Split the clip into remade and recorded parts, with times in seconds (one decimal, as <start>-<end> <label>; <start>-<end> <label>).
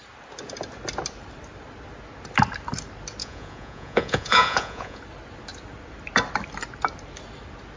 0.0-3.2 recorded; 3.2-5.0 remade; 5.0-7.8 recorded